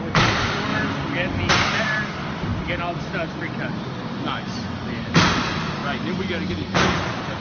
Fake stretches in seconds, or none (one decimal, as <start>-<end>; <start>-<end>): 0.0-2.5; 3.7-5.8; 6.5-7.4